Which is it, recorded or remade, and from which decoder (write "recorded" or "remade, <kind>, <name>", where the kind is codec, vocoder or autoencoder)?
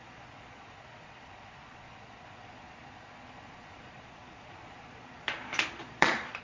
remade, vocoder, Vocos